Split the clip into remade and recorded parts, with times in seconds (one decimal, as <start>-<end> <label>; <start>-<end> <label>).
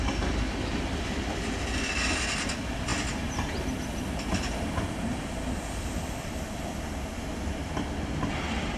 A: 0.0-8.8 recorded